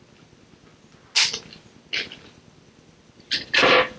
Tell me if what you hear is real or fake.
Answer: real